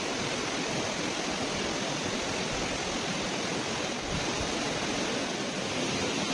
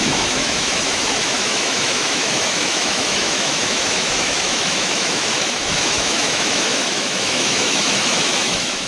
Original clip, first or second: first